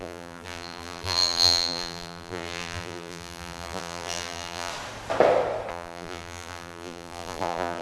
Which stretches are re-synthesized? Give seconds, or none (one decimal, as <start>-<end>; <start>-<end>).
0.0-4.7; 5.7-7.8